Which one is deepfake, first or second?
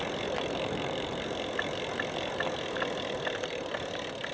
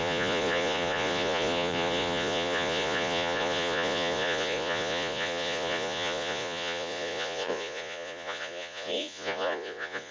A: second